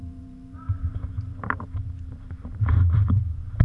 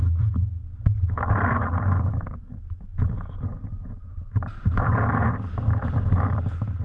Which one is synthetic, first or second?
first